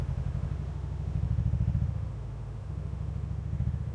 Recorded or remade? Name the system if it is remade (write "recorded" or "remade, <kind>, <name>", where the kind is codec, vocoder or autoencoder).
remade, autoencoder, DAC-VAE